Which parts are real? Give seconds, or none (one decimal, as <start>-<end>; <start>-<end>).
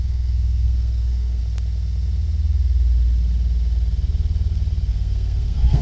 1.4-4.9